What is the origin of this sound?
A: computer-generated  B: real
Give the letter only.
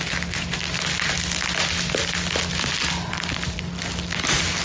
B